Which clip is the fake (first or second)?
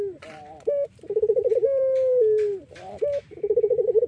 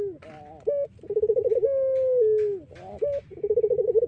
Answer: first